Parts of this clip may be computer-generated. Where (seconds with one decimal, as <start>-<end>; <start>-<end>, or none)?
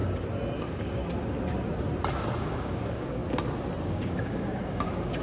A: 0.6-1.0; 2.4-3.2; 3.8-5.2